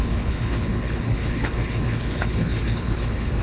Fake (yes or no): yes